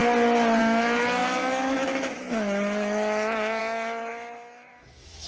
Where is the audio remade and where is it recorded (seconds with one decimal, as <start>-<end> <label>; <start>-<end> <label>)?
0.0-0.6 recorded; 0.6-5.3 remade